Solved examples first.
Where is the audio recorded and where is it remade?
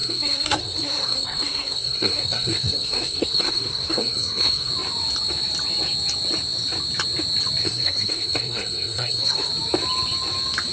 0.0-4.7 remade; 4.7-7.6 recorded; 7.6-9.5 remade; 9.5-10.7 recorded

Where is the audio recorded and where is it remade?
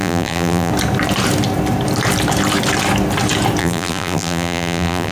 0.0-0.7 remade; 0.7-3.6 recorded; 3.6-5.1 remade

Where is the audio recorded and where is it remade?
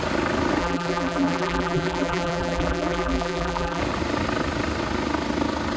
0.0-0.6 recorded; 0.6-3.8 remade; 3.8-5.8 recorded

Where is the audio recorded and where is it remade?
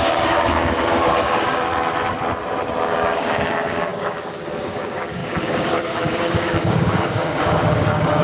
0.0-1.7 remade; 1.7-2.8 recorded; 2.8-8.2 remade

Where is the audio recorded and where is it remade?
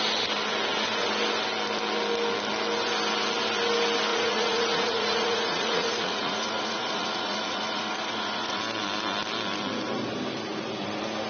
0.0-4.1 recorded; 4.1-8.6 remade; 8.6-11.3 recorded